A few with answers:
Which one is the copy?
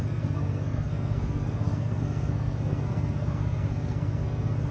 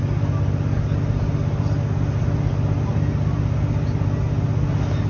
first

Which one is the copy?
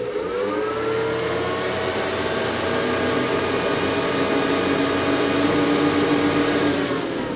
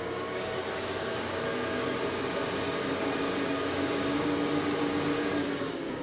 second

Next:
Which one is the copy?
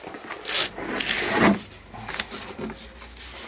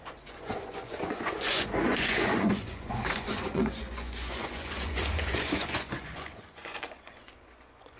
second